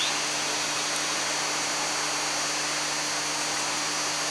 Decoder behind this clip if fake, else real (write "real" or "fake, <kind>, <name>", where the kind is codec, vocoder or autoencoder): real